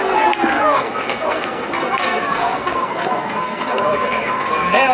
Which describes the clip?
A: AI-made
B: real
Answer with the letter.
A